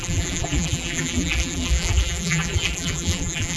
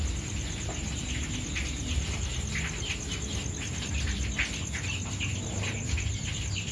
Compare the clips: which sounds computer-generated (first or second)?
first